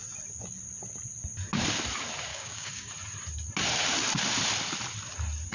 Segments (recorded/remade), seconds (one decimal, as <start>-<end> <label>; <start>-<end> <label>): 0.0-2.3 recorded; 2.3-2.9 remade; 2.9-5.5 recorded